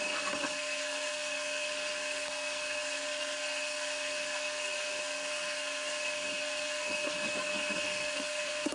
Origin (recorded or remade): remade